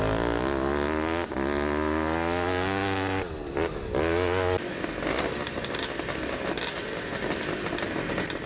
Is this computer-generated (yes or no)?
no